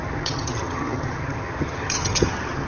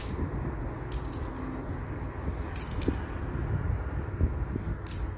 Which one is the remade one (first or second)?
first